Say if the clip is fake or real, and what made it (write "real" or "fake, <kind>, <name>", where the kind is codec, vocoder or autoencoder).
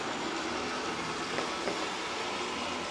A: real